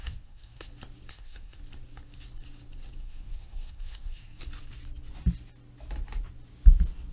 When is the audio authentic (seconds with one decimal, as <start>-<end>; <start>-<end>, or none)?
0.7-1.1; 1.6-3.0; 4.4-7.1